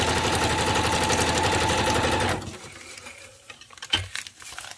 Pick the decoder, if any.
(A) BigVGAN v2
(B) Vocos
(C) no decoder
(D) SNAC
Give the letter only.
C